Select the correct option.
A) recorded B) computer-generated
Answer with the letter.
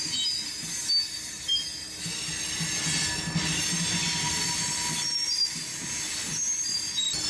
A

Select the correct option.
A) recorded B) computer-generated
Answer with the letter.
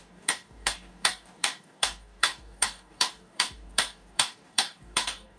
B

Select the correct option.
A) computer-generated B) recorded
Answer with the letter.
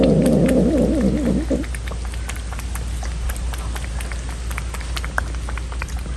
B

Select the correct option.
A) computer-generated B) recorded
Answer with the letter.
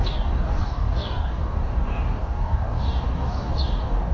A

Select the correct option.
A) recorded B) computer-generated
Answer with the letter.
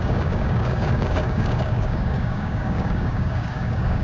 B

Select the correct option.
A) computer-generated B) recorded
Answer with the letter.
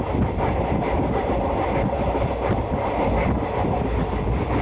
B